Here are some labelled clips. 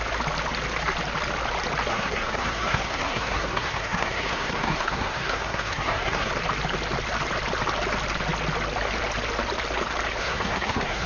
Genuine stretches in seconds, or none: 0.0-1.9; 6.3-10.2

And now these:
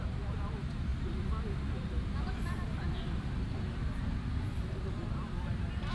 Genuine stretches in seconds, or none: 0.0-5.9

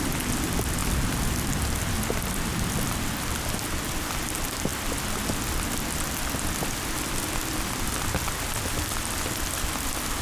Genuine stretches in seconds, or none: 0.0-10.2

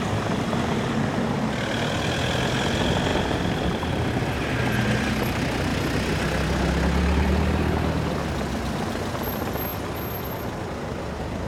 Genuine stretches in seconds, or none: 0.0-3.1; 3.9-11.5

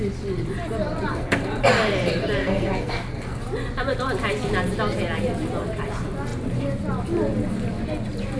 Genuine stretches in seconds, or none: 0.0-1.1; 1.6-2.4; 3.4-8.4